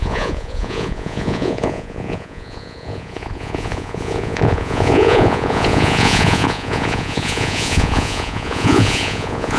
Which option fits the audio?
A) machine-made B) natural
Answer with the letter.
A